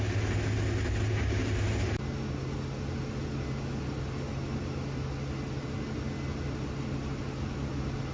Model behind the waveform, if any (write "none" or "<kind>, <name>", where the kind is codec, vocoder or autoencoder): none